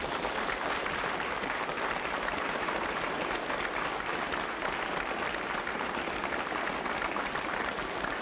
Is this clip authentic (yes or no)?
yes